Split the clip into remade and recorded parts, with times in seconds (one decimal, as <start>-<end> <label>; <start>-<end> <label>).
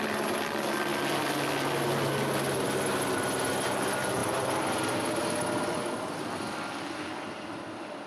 0.0-4.2 recorded; 4.2-5.2 remade; 5.2-8.1 recorded